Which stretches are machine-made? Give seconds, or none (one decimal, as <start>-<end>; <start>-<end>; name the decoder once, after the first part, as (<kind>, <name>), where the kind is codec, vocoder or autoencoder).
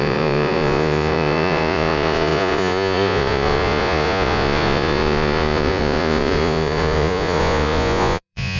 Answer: 0.0-8.6 (vocoder, Vocos)